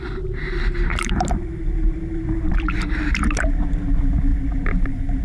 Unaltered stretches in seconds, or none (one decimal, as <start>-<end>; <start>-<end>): none

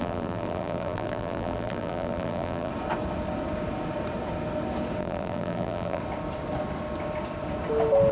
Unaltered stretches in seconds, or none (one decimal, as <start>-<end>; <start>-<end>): 2.7-5.0; 6.0-8.1

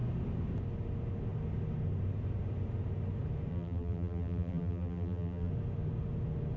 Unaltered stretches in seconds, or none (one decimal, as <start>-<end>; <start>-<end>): 0.0-3.5; 5.5-6.6

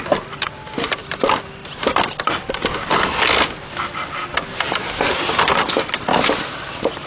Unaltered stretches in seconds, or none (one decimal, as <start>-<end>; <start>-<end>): 0.0-0.7; 1.2-1.6; 2.4-6.1

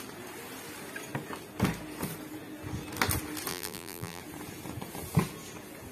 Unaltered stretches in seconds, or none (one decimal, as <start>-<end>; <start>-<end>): 0.0-3.5; 4.2-5.9

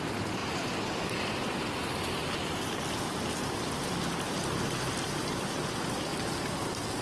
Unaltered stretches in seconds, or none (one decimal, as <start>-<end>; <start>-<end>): 0.0-7.0

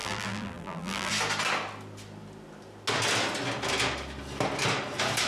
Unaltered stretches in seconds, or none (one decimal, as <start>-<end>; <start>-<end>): 1.1-5.3